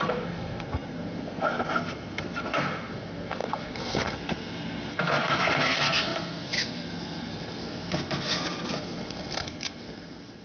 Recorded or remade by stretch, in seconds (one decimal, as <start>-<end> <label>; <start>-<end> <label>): 0.0-10.4 remade